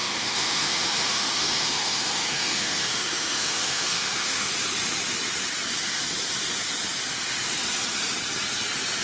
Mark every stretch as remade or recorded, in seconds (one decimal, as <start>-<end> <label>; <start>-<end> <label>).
0.0-4.5 remade; 4.5-9.0 recorded